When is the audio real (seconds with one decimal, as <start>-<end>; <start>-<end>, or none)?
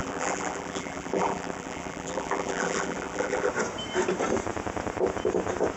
3.5-5.8